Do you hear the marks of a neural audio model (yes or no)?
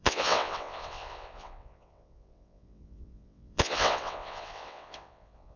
yes